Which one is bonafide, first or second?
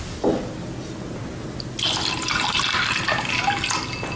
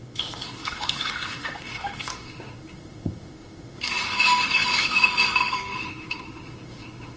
first